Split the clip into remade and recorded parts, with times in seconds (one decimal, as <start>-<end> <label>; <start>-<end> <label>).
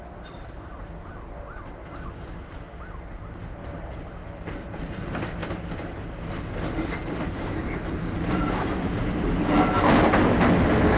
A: 0.0-11.0 recorded